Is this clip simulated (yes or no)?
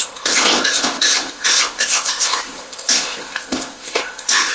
yes